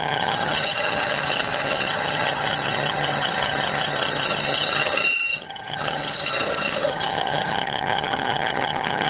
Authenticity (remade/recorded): remade